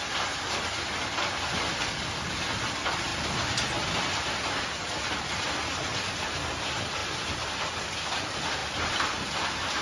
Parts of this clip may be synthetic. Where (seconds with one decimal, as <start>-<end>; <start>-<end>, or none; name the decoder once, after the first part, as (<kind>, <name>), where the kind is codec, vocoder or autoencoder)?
none